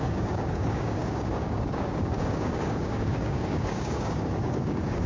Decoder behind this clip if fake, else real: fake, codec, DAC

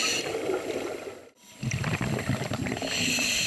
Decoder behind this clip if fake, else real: real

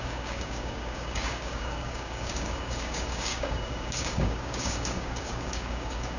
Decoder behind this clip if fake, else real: fake, codec, DAC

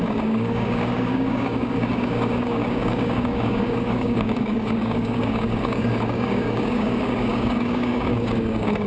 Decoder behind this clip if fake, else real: fake, codec, DAC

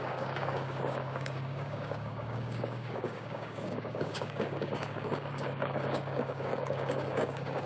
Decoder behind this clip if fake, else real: fake, codec, DAC